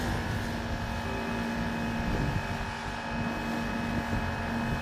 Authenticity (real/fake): real